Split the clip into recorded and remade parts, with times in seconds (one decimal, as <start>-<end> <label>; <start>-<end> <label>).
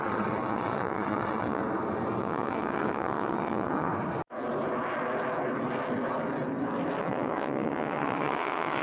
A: 0.0-1.6 remade; 1.6-2.2 recorded; 2.2-3.9 remade; 3.9-7.0 recorded; 7.0-8.8 remade